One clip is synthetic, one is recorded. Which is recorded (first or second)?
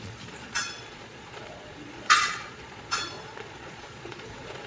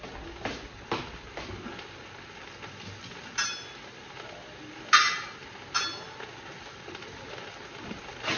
second